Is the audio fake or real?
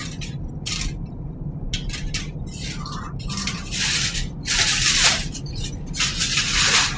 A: real